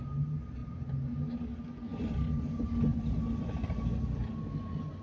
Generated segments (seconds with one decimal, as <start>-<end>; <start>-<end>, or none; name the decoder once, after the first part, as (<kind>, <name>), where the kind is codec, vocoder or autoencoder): 1.9-4.0 (vocoder, BigVGAN v2)